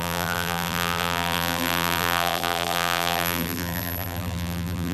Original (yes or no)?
no